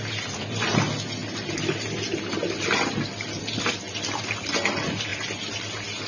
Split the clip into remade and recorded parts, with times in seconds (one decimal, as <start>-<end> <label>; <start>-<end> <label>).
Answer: 0.0-6.1 recorded